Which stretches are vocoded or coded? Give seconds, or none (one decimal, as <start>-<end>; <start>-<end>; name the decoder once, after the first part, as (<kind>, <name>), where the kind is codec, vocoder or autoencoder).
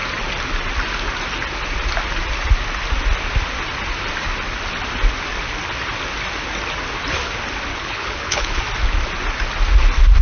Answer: 7.7-8.6 (codec, HILCodec)